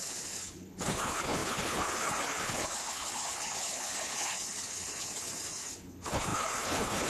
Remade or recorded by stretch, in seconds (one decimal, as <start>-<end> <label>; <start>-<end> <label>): 0.0-7.1 remade